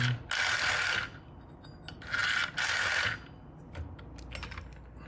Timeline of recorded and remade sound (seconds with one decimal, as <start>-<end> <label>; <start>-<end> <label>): 0.0-5.1 recorded